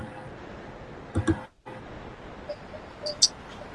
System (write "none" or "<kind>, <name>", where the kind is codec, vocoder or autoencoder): none